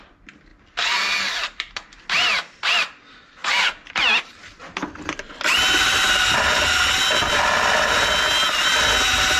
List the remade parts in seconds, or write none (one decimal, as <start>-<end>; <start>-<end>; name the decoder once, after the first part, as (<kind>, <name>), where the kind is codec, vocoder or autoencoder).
none